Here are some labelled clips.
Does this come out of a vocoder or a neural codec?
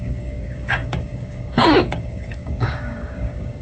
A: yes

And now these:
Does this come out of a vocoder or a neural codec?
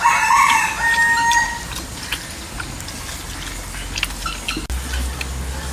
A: no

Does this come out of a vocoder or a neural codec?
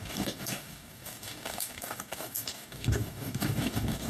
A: yes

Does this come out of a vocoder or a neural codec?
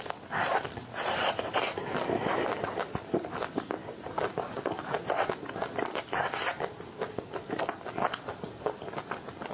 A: no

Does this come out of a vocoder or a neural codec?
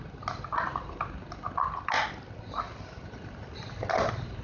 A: no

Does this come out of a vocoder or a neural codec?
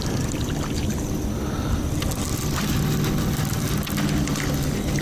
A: no